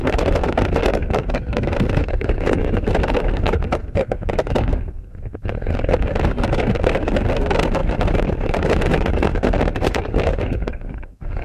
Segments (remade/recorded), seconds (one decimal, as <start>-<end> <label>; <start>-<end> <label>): 0.0-11.4 remade